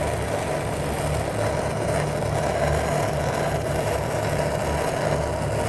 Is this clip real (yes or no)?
yes